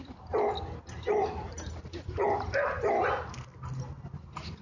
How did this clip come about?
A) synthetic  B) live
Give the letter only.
B